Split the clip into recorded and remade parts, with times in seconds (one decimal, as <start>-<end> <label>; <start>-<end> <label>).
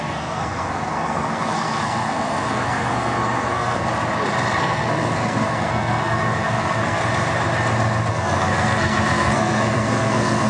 0.0-3.9 remade; 3.9-4.6 recorded; 4.6-7.0 remade; 7.0-8.1 recorded; 8.1-10.5 remade